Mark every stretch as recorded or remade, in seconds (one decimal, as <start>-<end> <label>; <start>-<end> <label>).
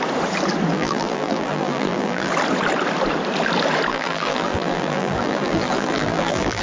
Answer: 0.0-0.7 recorded; 0.7-2.3 remade; 2.3-3.9 recorded; 3.9-6.6 remade